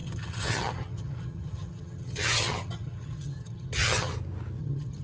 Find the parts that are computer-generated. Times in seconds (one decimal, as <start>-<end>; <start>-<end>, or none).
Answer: 0.0-4.1; 4.6-5.0